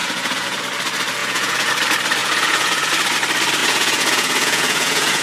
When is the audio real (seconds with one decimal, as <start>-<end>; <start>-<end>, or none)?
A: 0.6-1.2; 1.7-2.2; 2.9-3.6